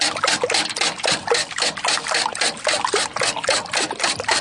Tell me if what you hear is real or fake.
real